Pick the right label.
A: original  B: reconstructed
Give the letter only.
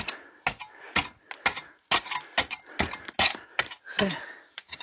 A